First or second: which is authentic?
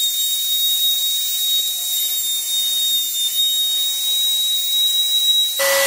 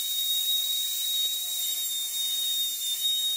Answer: first